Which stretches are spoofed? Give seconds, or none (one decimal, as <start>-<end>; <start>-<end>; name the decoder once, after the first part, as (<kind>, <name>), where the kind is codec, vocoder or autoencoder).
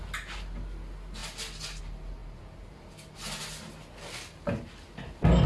none